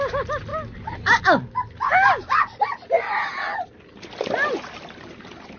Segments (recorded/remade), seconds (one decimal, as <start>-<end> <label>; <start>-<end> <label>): 0.0-5.6 recorded